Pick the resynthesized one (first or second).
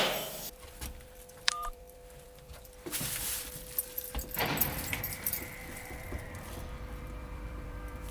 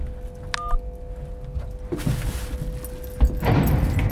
first